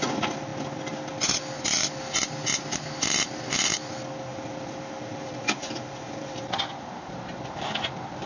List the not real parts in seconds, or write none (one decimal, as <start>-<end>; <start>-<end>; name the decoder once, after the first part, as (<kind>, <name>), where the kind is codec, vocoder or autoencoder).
4.3-7.4 (vocoder, BigVGAN v2)